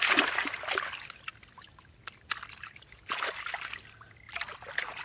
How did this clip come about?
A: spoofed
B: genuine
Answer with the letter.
B